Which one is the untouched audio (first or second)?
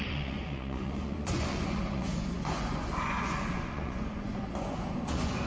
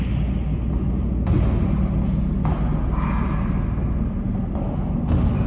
second